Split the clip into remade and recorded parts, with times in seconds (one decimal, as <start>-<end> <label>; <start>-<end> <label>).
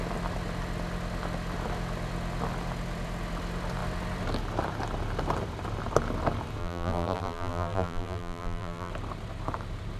0.0-6.6 recorded; 6.6-8.9 remade; 8.9-10.0 recorded